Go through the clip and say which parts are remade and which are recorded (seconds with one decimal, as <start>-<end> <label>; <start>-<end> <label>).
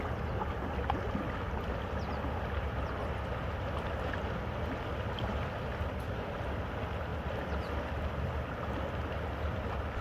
0.0-10.0 recorded